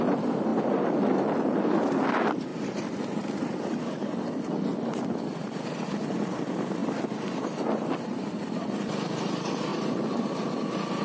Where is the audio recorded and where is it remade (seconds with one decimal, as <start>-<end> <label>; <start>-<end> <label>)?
0.0-0.5 remade; 0.5-1.9 recorded; 1.9-2.5 remade; 2.5-3.4 recorded; 3.4-6.8 remade; 6.8-8.1 recorded; 8.1-11.0 remade